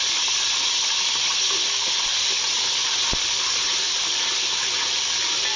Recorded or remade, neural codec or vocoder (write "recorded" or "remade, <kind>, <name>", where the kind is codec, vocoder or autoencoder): recorded